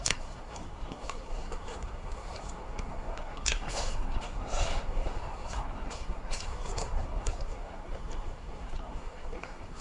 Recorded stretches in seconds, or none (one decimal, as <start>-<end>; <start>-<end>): none